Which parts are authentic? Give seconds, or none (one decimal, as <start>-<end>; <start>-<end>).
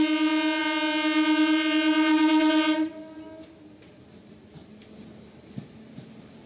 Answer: 0.0-6.5